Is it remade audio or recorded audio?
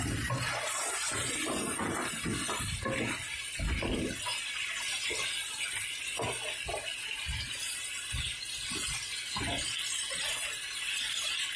recorded